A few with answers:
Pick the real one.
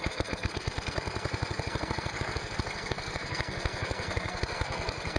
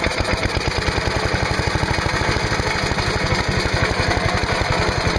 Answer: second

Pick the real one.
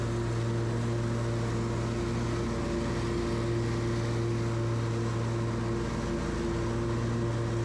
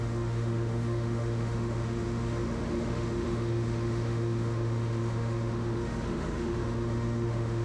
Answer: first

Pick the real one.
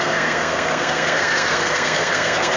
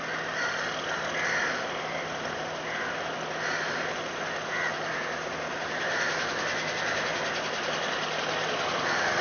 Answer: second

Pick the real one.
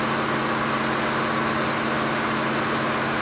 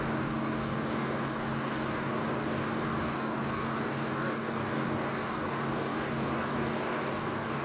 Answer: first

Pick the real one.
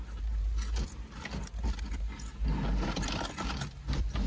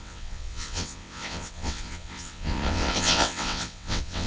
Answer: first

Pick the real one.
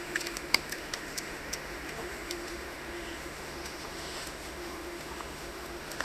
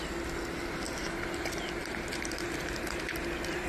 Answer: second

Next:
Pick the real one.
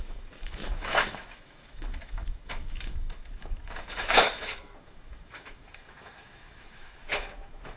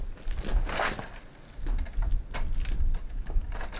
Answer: second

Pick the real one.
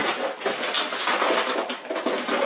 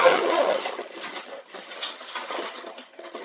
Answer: first